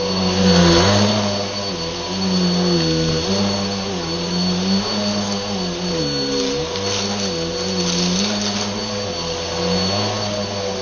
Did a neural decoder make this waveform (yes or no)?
no